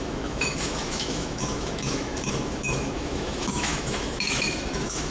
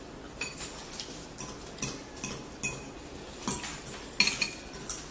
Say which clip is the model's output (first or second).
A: first